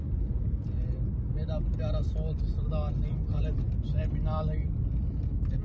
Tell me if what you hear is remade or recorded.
recorded